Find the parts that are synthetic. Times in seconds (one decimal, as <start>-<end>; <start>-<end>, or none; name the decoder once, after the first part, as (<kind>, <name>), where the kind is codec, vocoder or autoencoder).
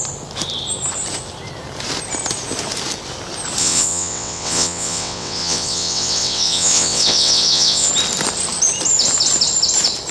3.6-7.9 (vocoder, WaveNeXt)